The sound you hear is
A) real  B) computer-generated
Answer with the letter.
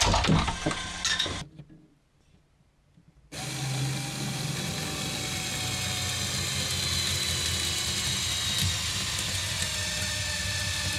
A